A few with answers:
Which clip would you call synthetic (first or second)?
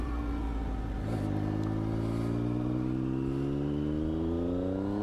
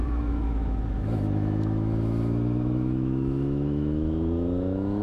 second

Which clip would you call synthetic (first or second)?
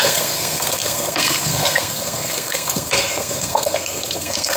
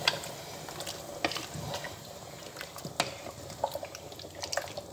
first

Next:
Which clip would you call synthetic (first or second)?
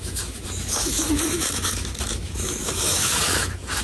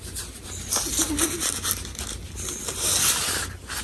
first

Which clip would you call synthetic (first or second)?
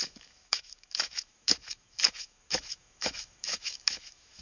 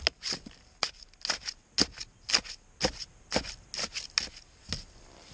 first